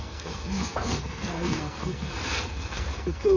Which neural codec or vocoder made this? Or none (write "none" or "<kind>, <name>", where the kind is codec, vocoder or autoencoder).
codec, SNAC